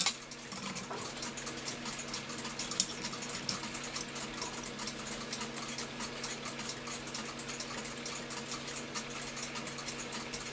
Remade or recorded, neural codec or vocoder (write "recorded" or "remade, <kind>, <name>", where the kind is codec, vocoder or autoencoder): recorded